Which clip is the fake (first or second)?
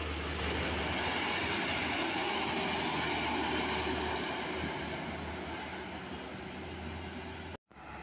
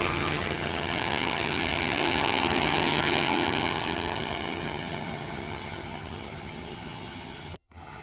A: second